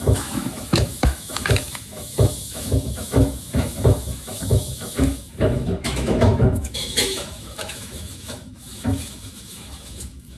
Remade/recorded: remade